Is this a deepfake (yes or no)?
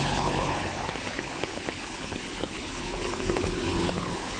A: yes